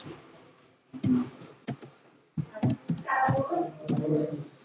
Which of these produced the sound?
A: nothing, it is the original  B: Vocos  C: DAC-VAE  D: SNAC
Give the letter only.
A